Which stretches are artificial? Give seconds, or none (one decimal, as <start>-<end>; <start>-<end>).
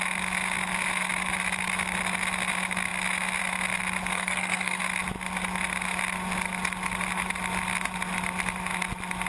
4.1-4.8